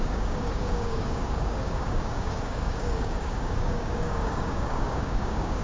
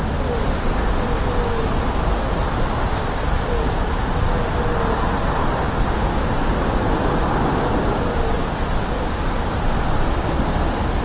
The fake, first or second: first